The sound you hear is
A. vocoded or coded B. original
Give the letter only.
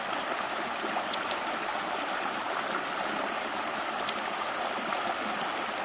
B